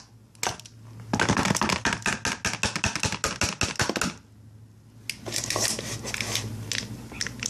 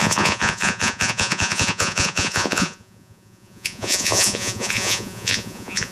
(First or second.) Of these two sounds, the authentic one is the first